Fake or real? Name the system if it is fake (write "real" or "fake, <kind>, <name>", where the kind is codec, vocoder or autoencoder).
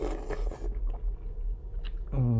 real